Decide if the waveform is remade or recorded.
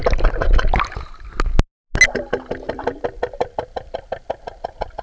recorded